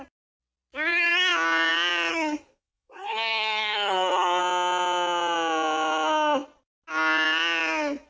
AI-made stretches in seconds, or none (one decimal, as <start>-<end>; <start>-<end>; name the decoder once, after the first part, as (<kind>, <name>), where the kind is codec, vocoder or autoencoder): 2.1-4.4 (codec, SNAC)